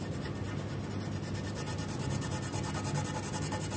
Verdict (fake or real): real